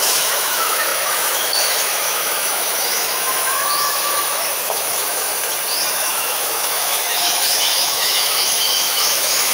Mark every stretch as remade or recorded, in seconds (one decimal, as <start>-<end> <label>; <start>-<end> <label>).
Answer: 0.0-5.3 remade; 5.3-5.9 recorded; 5.9-9.5 remade